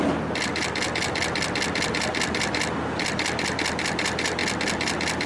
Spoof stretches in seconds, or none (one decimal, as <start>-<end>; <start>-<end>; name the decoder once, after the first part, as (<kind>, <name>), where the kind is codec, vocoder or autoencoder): none